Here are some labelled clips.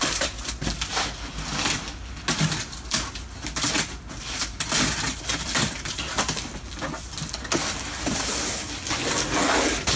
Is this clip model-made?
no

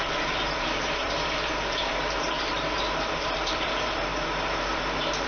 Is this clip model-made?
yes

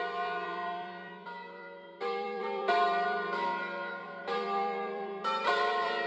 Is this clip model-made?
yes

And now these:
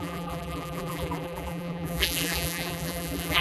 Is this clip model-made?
yes